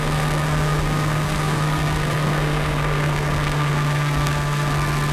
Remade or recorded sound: remade